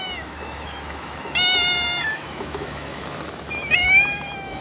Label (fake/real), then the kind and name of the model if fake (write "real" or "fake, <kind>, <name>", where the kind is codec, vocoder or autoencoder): fake, autoencoder, DAC-VAE